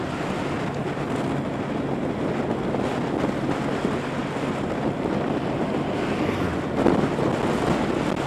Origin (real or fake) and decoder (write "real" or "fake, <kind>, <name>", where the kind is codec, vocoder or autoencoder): real